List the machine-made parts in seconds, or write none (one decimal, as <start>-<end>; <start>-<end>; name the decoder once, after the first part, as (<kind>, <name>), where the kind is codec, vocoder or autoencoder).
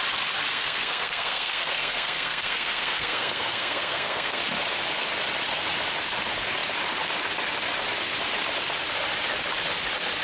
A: 0.5-4.4 (codec, SNAC)